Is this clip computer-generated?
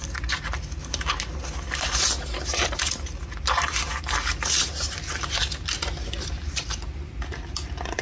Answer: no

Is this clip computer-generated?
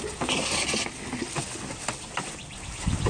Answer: no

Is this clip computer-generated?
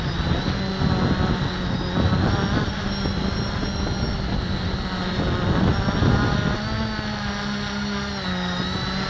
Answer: no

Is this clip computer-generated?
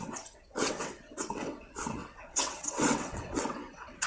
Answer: yes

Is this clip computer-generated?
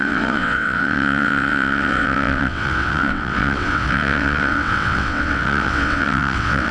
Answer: yes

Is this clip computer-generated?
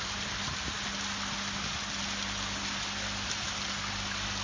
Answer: no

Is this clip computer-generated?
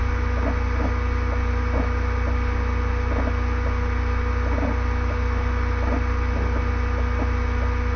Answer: no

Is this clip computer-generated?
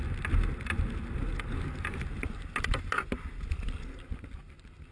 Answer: no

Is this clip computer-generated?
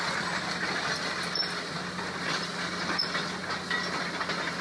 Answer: no